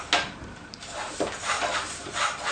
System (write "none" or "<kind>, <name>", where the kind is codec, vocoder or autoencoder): none